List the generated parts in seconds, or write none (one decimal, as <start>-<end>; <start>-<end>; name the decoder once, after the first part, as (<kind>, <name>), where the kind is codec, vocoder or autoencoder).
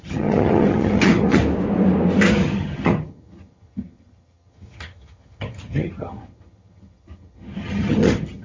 0.0-1.4 (vocoder, HiFi-GAN); 2.3-8.4